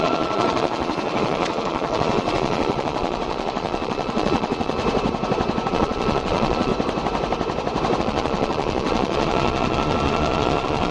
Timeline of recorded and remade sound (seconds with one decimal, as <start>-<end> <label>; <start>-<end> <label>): 0.0-4.8 remade; 4.8-5.7 recorded; 5.7-6.7 remade; 6.7-8.0 recorded; 8.0-10.9 remade